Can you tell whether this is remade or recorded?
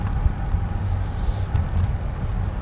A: recorded